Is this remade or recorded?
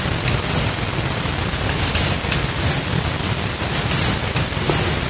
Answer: recorded